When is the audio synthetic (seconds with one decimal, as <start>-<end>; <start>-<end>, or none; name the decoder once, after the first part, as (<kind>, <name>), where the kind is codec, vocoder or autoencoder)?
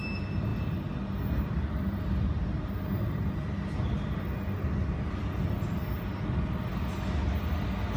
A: none